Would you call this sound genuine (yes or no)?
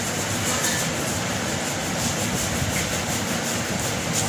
yes